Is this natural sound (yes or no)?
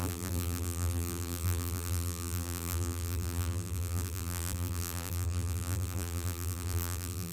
no